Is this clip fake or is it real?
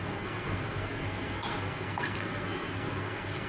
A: fake